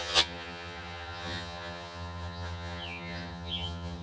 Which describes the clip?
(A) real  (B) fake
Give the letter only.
B